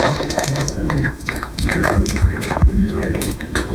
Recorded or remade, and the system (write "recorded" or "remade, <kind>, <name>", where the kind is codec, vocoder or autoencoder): remade, autoencoder, DAC-VAE